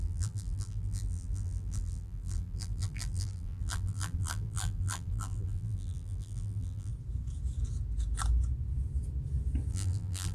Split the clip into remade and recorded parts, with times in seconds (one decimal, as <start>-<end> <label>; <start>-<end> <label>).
0.0-6.9 remade; 6.9-9.7 recorded; 9.7-10.3 remade